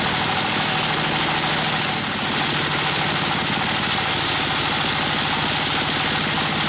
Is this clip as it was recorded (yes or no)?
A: yes